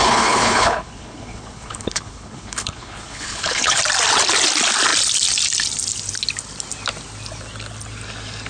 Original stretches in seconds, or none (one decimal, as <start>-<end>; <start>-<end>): 3.8-8.5